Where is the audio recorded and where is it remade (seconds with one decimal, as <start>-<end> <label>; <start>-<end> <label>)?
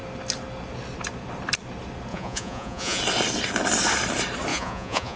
0.0-2.1 recorded; 2.1-3.0 remade; 3.0-4.5 recorded; 4.5-5.2 remade